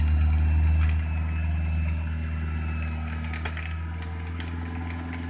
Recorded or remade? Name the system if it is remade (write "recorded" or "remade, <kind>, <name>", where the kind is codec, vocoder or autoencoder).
recorded